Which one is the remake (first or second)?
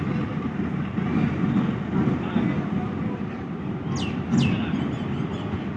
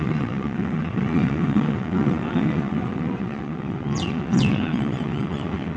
second